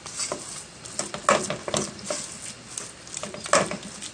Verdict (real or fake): real